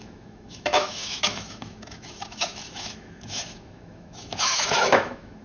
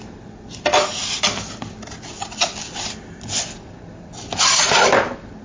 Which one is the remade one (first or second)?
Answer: first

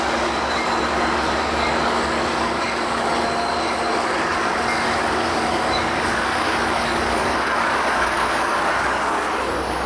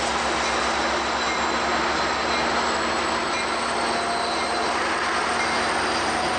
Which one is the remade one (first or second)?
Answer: first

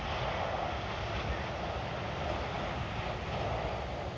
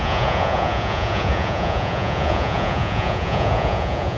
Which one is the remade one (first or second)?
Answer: second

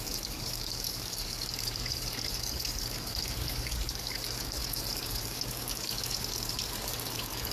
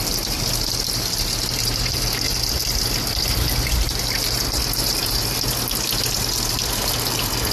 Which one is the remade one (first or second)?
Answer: first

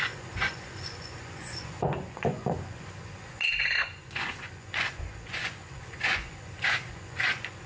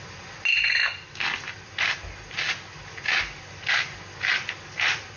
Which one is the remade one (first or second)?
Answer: first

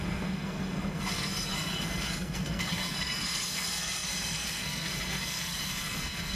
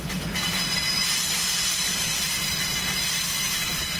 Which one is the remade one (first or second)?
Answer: first